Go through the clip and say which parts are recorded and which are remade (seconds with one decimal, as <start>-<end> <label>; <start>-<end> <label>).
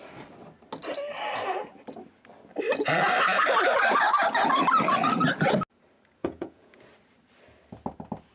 0.0-6.2 recorded; 6.2-6.8 remade; 6.8-8.3 recorded